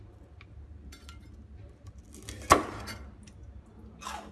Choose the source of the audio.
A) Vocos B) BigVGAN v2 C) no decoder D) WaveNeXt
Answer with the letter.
C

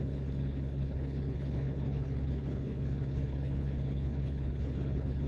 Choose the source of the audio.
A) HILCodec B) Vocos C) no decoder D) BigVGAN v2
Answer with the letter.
A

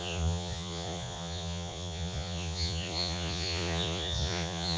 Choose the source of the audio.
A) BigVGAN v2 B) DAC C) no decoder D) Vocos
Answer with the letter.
D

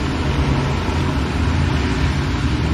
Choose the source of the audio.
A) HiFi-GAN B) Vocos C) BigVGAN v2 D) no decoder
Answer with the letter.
D